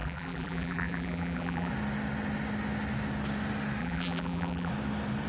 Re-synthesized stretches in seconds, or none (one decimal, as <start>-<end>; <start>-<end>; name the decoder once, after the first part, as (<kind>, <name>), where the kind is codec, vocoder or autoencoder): 0.0-1.7 (vocoder, BigVGAN v2); 3.8-4.7